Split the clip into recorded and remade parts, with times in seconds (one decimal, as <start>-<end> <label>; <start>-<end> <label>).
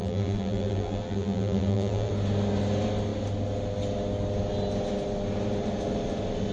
0.0-2.1 remade; 2.1-6.5 recorded